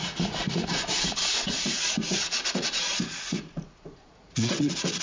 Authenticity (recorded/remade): remade